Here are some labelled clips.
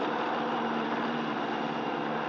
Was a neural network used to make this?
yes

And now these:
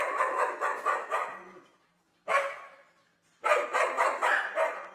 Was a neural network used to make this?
yes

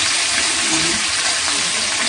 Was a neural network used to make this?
no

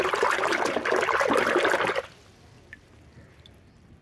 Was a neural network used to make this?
yes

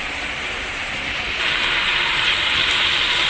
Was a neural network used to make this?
yes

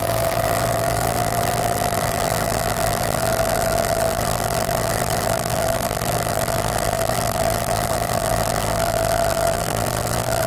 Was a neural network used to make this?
yes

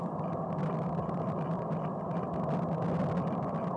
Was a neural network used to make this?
yes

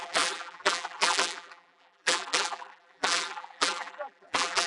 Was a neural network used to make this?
yes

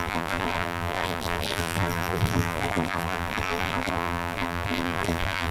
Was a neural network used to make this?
yes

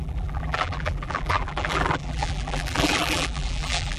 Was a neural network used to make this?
yes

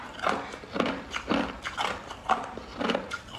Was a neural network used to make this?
yes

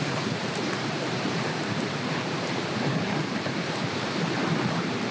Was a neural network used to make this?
yes